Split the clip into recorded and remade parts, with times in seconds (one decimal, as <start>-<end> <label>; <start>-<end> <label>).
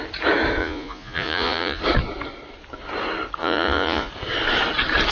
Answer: 0.0-0.6 recorded; 0.6-1.8 remade; 1.8-3.4 recorded; 3.4-4.1 remade; 4.1-5.1 recorded